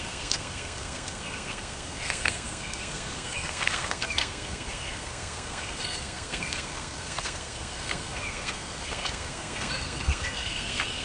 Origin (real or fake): fake